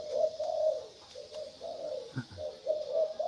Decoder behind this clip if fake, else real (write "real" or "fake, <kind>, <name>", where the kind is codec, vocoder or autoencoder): real